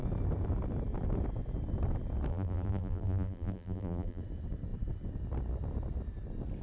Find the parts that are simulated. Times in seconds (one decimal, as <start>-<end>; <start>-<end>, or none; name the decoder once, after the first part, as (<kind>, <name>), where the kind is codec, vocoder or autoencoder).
2.3-4.2 (vocoder, BigVGAN v2)

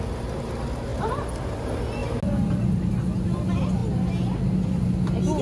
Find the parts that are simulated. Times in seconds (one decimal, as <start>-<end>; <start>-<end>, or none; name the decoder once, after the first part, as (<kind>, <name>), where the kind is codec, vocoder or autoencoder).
0.9-1.5 (vocoder, BigVGAN v2)

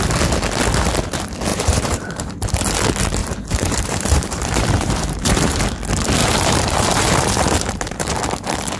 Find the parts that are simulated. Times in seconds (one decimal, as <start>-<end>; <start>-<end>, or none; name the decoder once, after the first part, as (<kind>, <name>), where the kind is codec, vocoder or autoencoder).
1.5-2.3 (vocoder, BigVGAN v2); 3.2-5.6; 6.2-8.1

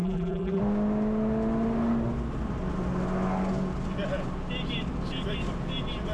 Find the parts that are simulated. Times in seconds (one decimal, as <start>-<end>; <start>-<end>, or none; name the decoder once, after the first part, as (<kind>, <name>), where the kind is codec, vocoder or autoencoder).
0.0-0.6 (vocoder, BigVGAN v2)

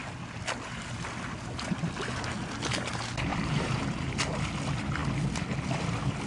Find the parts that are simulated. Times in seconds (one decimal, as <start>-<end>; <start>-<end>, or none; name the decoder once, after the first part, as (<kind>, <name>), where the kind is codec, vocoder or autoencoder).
3.3-4.1 (vocoder, BigVGAN v2)

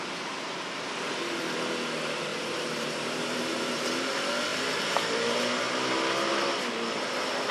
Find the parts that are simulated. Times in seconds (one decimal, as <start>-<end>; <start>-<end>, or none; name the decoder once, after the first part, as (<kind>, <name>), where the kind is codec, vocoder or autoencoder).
2.3-3.9 (vocoder, BigVGAN v2); 4.5-5.4

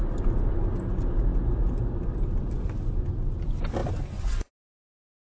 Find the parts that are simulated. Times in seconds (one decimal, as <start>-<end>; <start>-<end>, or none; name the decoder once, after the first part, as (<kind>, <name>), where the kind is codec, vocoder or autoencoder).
none

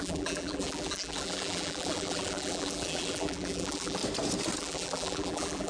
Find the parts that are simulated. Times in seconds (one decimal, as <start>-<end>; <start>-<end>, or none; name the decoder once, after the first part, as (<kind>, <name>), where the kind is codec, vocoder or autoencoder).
0.0-4.0 (vocoder, BigVGAN v2); 4.6-5.7